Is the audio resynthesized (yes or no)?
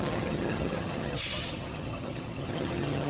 yes